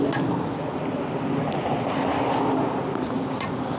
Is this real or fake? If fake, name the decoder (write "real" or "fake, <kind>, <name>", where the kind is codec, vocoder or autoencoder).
real